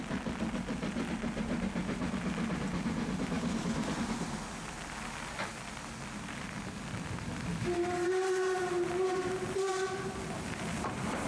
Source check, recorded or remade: recorded